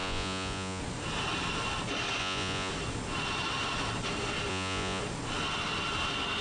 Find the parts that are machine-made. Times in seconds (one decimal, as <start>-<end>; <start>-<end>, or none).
0.0-0.8; 2.2-2.7; 4.5-5.0